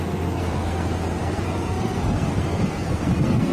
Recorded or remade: remade